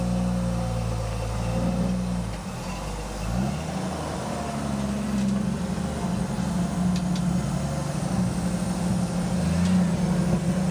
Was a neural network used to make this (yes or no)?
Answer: no